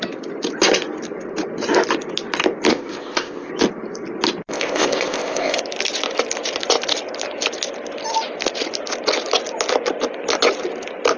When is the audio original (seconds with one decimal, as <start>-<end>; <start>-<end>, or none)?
0.0-2.7; 3.5-4.5; 5.6-11.2